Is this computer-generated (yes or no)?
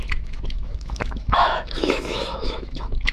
yes